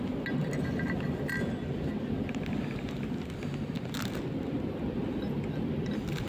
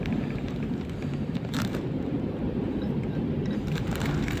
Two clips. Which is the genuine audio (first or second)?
first